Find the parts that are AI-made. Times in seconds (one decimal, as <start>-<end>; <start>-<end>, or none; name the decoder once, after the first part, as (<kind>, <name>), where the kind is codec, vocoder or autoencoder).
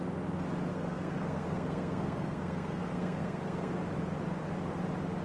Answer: 0.7-3.8 (codec, SNAC)